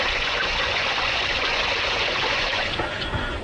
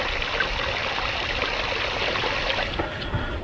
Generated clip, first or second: first